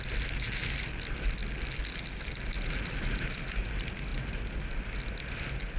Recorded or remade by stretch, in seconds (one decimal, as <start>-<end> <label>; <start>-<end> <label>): 0.0-5.8 recorded